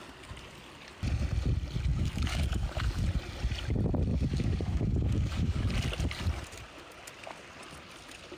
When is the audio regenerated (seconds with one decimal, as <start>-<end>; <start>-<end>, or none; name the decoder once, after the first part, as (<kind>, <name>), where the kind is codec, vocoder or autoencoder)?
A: 1.9-3.0 (codec, DAC); 4.1-5.7